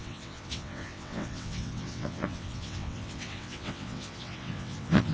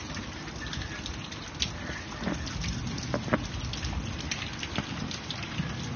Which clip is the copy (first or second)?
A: first